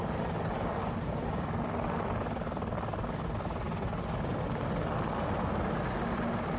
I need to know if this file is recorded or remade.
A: recorded